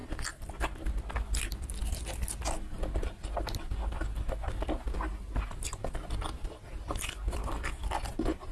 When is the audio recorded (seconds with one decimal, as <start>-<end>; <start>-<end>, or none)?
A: 0.0-8.5